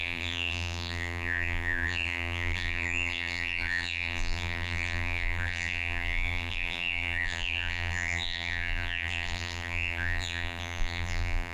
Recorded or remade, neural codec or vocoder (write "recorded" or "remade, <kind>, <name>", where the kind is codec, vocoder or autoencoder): remade, vocoder, BigVGAN v2